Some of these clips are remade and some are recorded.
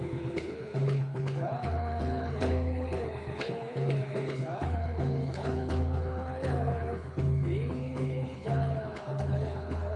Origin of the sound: remade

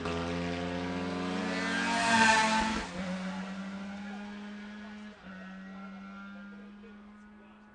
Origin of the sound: recorded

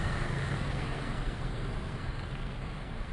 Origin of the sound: remade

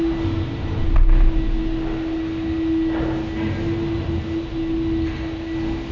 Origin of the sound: recorded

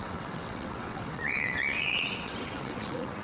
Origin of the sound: remade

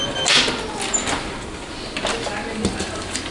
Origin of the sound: recorded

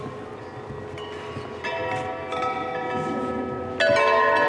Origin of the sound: recorded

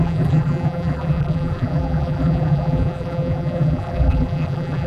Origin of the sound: remade